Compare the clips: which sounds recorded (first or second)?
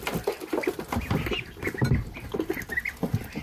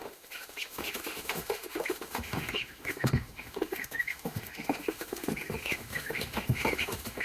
first